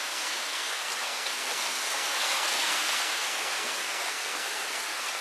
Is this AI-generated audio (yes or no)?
yes